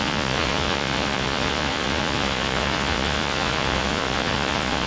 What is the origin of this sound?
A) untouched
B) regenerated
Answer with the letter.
B